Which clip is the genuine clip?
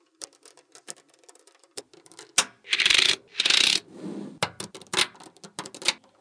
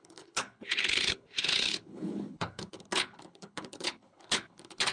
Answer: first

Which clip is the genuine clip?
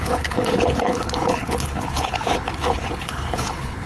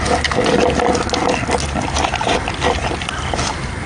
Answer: second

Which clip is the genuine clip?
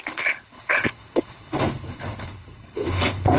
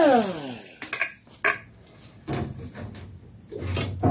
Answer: second